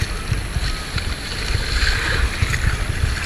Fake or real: real